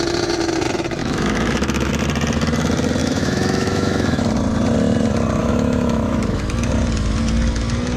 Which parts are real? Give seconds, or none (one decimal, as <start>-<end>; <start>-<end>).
0.0-1.0; 1.9-3.0; 4.2-5.4; 6.4-8.0